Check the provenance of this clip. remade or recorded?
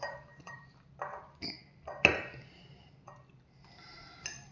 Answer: recorded